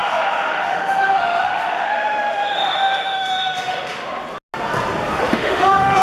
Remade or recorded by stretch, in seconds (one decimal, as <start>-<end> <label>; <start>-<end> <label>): 0.0-4.0 remade; 4.0-5.1 recorded; 5.1-6.0 remade